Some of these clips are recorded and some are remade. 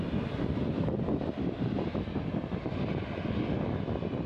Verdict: recorded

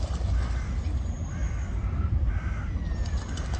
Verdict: recorded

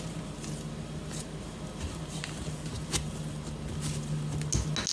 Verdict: recorded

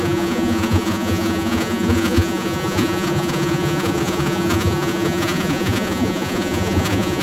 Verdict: remade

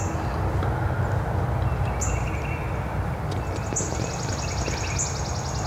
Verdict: recorded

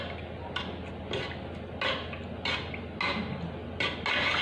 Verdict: recorded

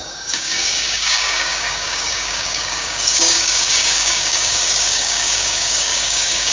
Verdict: remade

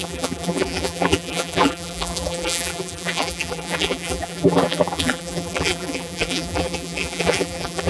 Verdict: remade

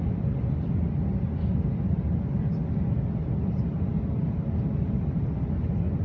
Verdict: recorded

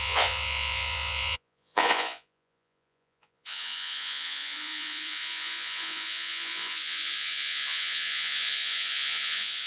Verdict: remade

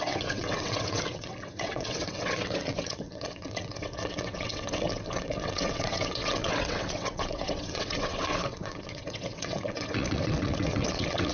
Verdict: remade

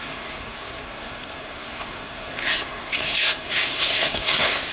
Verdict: remade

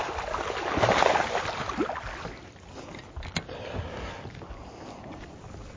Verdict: recorded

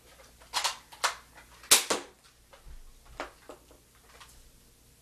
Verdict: recorded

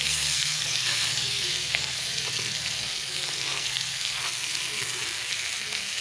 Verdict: remade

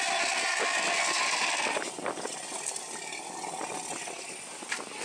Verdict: recorded